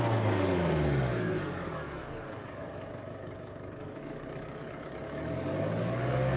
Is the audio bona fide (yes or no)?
no